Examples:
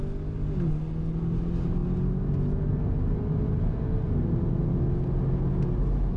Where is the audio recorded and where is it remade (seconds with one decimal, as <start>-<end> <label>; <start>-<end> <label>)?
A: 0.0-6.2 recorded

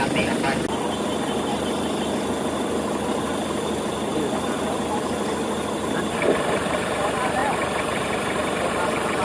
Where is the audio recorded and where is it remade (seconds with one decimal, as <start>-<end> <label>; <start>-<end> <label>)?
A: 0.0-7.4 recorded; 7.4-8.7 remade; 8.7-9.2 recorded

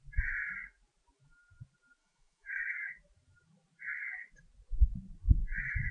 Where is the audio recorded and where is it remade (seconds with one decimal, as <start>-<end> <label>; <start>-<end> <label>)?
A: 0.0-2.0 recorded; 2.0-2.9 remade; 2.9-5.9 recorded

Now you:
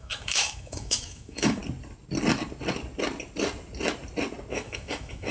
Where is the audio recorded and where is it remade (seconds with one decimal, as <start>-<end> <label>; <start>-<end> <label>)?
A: 0.0-1.6 remade; 1.6-4.5 recorded; 4.5-5.3 remade

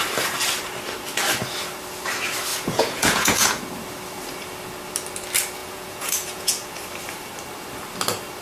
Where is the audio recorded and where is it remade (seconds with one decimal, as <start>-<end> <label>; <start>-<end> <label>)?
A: 0.0-2.5 recorded; 2.5-3.6 remade; 3.6-5.6 recorded; 5.6-6.7 remade; 6.7-8.4 recorded